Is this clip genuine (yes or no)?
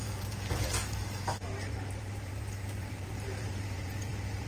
no